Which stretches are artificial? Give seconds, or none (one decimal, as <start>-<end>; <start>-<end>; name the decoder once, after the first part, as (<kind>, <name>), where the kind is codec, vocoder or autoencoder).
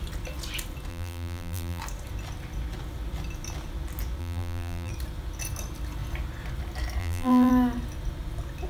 0.9-1.8 (vocoder, BigVGAN v2); 4.2-4.9; 7.0-7.5